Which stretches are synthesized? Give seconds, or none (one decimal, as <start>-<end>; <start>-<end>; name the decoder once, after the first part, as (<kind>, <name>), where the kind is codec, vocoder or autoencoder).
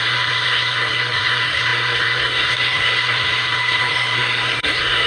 0.0-5.1 (codec, SNAC)